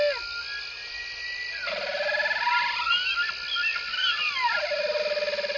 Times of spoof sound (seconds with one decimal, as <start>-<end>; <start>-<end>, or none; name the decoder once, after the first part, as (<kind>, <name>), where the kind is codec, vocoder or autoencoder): none